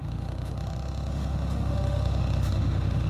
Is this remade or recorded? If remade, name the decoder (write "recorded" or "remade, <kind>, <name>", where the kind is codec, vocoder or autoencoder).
remade, autoencoder, DAC-VAE